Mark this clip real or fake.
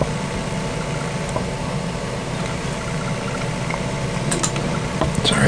real